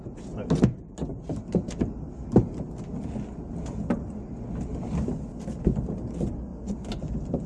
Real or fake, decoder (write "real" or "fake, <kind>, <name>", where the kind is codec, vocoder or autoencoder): real